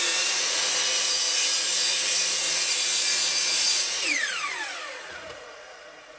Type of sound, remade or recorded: remade